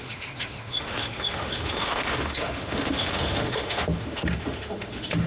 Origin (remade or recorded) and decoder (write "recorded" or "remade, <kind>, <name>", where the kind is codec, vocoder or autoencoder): remade, autoencoder, DAC-VAE